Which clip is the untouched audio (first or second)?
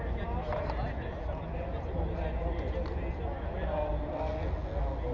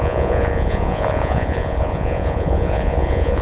first